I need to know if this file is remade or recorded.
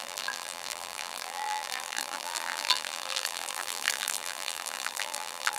remade